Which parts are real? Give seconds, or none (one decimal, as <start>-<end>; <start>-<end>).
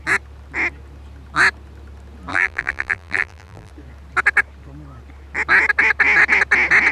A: 0.0-2.3; 3.7-6.9